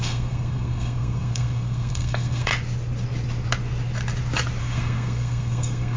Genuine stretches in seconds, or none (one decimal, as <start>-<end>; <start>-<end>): 2.5-4.6